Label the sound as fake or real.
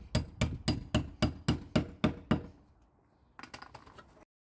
real